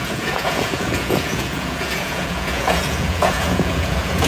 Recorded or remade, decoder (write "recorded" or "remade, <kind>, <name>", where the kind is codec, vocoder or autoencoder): remade, vocoder, Vocos